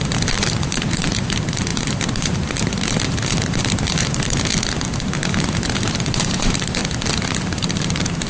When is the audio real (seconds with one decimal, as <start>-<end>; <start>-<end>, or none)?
4.5-5.0; 6.8-7.4